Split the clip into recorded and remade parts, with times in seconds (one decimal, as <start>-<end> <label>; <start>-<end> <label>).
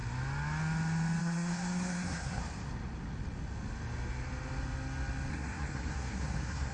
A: 0.0-1.2 recorded; 1.2-2.4 remade; 2.4-5.3 recorded; 5.3-6.7 remade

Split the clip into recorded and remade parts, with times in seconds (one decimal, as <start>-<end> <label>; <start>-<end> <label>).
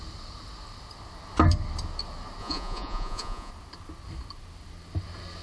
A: 0.0-2.4 recorded; 2.4-3.5 remade; 3.5-5.4 recorded